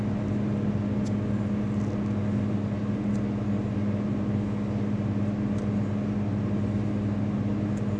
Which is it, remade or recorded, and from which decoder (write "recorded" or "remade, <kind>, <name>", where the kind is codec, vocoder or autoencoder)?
recorded